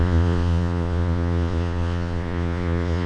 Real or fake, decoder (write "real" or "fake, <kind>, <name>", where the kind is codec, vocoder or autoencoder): fake, vocoder, Vocos